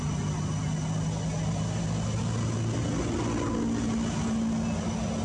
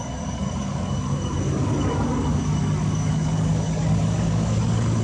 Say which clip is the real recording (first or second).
first